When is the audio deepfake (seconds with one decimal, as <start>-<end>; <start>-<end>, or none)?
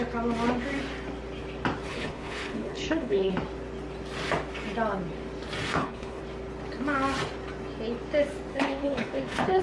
1.9-3.3; 5.7-6.2; 8.5-9.6